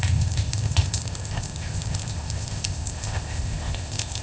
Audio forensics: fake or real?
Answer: fake